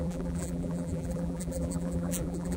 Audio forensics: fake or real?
fake